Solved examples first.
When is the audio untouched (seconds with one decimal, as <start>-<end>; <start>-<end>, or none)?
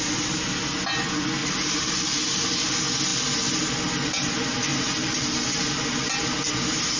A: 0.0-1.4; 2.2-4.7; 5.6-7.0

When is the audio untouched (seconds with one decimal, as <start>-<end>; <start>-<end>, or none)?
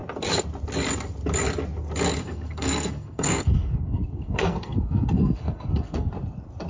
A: 0.0-2.2; 6.1-6.7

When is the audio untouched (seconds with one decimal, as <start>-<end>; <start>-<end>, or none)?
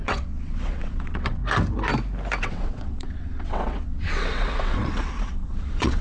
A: 1.4-2.4